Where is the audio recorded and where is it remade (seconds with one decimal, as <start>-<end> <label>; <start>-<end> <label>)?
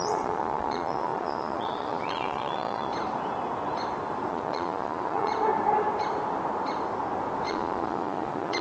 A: 0.0-2.9 remade; 2.9-4.3 recorded; 4.3-5.3 remade; 5.3-7.5 recorded; 7.5-8.6 remade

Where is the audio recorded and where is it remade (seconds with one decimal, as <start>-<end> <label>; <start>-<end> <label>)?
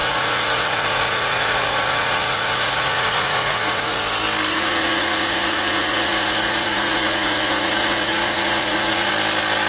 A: 0.0-4.0 remade; 4.0-4.5 recorded; 4.5-9.1 remade; 9.1-9.7 recorded